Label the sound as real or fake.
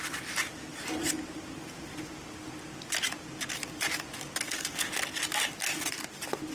real